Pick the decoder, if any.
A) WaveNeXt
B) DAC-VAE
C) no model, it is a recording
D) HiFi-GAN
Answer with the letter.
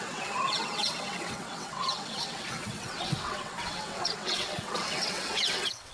A